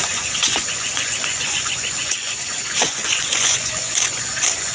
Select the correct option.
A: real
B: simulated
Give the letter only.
B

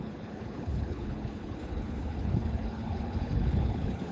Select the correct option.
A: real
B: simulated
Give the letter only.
B